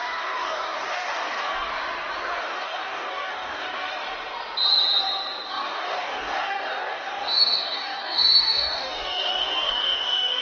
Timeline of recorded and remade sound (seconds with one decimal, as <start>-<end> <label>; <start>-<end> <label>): 0.0-1.7 remade; 1.7-2.4 recorded; 2.4-3.9 remade; 3.9-5.5 recorded; 5.5-10.4 remade